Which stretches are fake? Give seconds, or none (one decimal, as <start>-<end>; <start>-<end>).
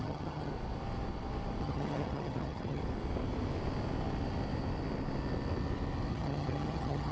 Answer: 0.0-0.5; 1.6-2.8; 6.1-7.1